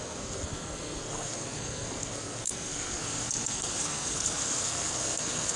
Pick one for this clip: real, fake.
fake